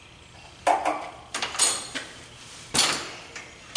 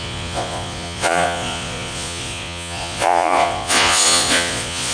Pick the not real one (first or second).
second